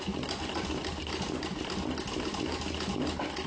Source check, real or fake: real